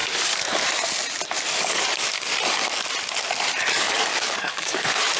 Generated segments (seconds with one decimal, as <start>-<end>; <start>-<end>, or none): 1.6-2.3; 3.7-5.2